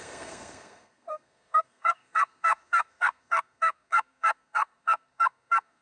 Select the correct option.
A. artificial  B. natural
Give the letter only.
A